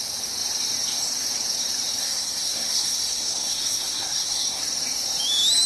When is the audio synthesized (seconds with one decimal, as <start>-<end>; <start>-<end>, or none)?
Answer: 2.0-4.6